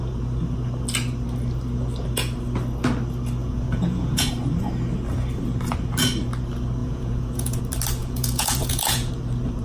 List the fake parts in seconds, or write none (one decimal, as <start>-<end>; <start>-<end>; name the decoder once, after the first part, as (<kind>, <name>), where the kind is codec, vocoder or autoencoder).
3.4-4.3 (vocoder, Vocos); 6.8-7.6; 8.0-9.1